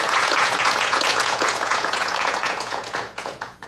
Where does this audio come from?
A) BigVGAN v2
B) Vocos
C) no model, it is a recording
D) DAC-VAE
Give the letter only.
B